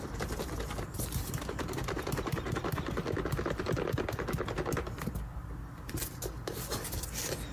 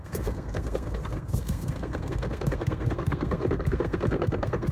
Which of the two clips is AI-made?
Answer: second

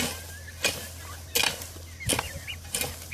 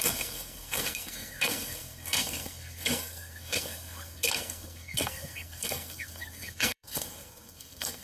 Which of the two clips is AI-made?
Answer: second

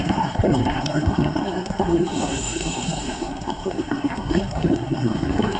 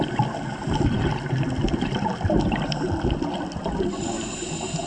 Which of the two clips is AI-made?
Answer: first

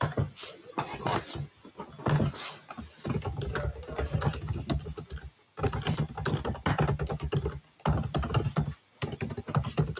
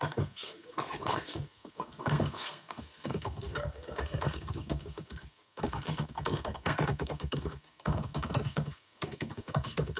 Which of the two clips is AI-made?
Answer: second